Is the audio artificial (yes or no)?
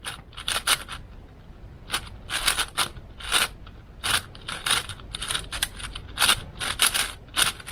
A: no